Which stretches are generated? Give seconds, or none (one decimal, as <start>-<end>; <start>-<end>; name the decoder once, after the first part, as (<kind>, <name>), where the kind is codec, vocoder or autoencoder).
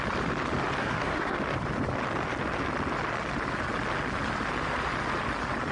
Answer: 0.8-1.4 (codec, SNAC)